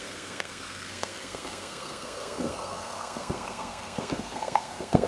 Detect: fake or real fake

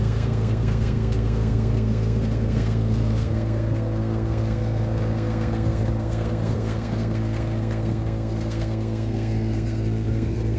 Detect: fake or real fake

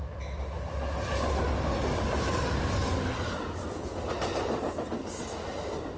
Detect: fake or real real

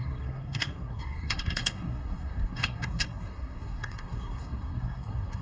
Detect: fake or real fake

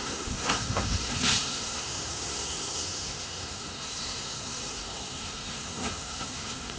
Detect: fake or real fake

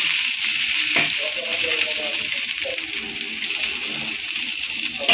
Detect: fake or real real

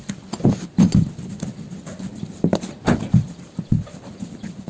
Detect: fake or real real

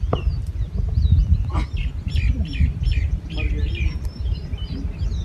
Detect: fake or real real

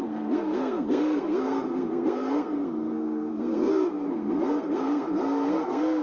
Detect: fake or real fake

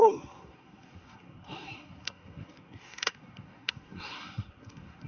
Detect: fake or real fake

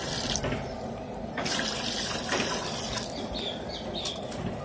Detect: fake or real real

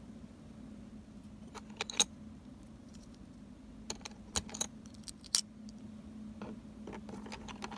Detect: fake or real real